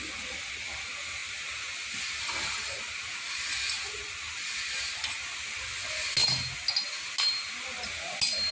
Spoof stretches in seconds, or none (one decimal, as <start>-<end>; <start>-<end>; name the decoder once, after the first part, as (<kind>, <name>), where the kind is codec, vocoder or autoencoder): none

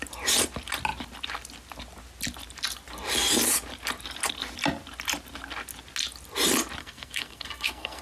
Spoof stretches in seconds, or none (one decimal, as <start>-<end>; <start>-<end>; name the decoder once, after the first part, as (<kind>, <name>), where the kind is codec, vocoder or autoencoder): 6.8-8.0 (codec, SNAC)

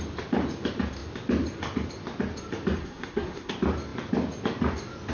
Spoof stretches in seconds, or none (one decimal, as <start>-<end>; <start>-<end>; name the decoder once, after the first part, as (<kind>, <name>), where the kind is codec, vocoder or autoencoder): 2.8-3.5 (codec, SNAC)

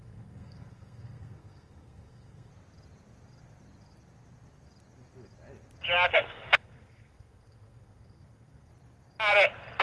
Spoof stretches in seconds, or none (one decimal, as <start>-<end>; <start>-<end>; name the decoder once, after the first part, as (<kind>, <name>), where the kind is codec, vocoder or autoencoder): 0.0-2.5 (codec, SNAC); 6.1-8.7

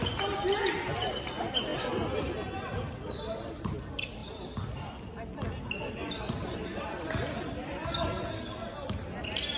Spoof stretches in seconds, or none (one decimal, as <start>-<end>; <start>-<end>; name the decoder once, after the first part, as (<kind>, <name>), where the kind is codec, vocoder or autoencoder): 4.2-5.1 (vocoder, BigVGAN v2); 6.0-7.1

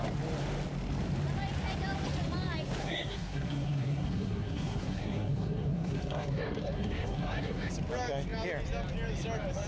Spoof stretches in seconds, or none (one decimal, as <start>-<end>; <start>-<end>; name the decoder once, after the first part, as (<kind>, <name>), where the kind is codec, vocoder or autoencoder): 2.8-7.7 (codec, SNAC)

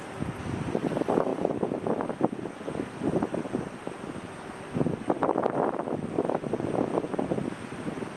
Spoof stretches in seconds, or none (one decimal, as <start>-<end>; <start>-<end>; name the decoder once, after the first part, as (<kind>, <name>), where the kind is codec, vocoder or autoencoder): none

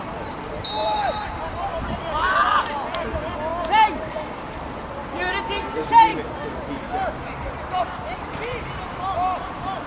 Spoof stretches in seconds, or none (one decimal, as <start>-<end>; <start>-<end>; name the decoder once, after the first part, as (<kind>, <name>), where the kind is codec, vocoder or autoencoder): 0.0-3.5 (vocoder, BigVGAN v2); 4.1-6.1; 7.8-9.9